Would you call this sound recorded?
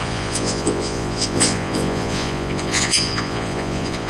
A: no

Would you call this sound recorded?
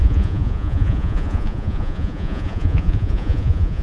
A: no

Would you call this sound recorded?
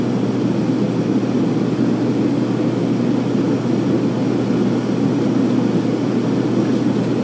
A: yes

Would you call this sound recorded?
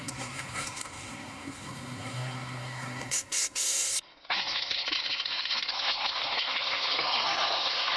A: no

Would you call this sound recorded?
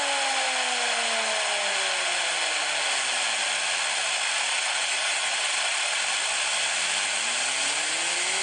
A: yes